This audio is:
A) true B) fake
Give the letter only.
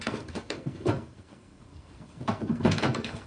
B